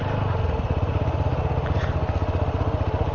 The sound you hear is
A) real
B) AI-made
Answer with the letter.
A